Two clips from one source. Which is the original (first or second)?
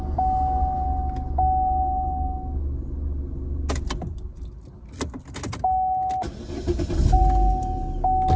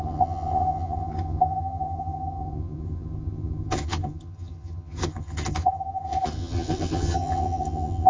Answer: first